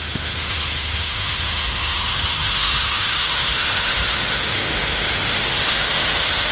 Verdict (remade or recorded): remade